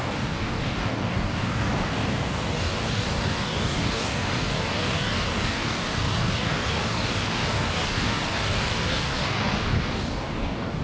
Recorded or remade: remade